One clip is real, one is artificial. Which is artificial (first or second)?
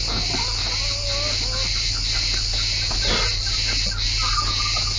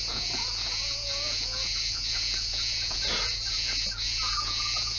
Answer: second